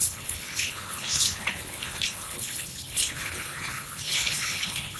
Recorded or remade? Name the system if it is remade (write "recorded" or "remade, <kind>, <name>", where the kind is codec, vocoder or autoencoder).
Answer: remade, codec, HILCodec